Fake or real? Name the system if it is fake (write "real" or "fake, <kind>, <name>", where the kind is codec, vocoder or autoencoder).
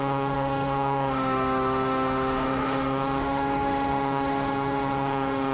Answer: fake, autoencoder, DAC-VAE